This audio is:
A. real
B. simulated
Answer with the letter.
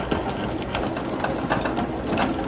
A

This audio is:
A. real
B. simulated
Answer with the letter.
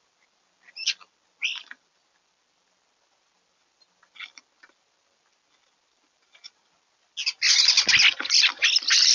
A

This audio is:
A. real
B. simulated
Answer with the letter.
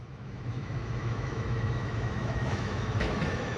B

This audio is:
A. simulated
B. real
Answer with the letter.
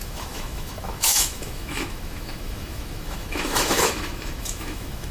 A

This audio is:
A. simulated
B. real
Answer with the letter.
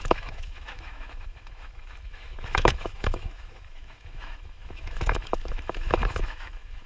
A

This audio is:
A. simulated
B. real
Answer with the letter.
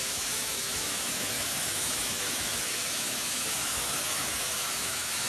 A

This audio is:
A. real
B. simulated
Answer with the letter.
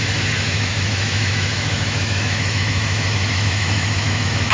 B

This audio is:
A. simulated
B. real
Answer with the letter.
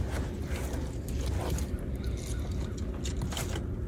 B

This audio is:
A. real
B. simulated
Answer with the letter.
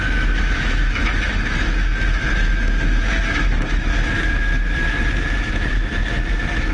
B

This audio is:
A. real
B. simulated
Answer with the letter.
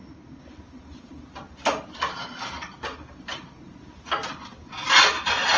A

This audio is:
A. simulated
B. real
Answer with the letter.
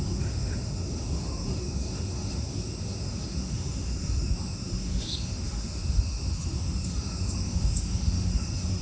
A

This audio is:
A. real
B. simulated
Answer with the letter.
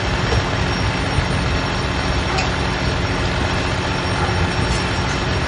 A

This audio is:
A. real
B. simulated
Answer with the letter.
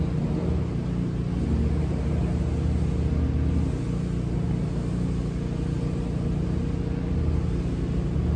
A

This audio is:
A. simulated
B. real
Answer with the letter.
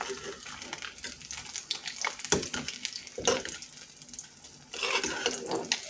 B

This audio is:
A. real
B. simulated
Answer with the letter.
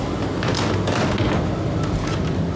A